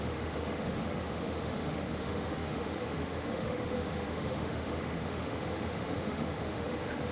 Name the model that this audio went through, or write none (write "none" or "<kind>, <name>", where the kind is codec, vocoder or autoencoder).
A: autoencoder, DAC-VAE